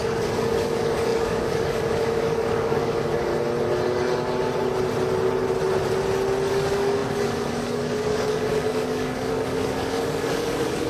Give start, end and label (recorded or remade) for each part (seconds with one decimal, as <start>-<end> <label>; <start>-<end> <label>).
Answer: 0.0-3.3 remade; 3.3-6.5 recorded; 6.5-10.9 remade